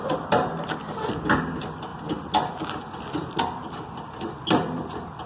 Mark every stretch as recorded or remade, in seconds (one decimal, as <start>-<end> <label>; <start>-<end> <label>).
0.0-5.3 recorded